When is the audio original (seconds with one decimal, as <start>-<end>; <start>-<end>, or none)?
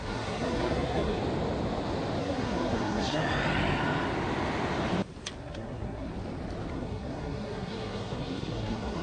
1.2-2.2; 3.2-5.4; 6.1-6.7